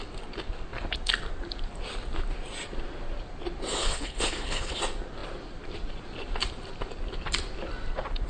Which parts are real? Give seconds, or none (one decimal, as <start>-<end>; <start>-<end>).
0.0-3.8; 4.8-8.3